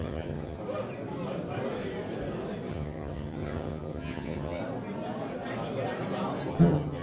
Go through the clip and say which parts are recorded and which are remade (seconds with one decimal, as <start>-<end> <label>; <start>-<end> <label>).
0.0-0.6 remade; 0.6-2.7 recorded; 2.7-4.6 remade; 4.6-6.5 recorded; 6.5-7.0 remade